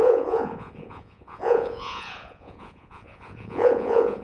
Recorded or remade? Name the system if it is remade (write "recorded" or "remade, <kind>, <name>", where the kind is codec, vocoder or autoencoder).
remade, vocoder, Vocos